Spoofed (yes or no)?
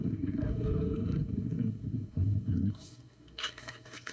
yes